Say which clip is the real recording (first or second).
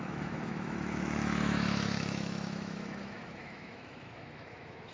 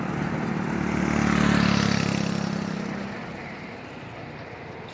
second